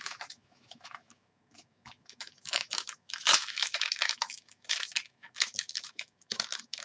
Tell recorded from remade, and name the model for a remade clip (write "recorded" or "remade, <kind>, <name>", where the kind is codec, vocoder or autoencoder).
remade, autoencoder, DAC-VAE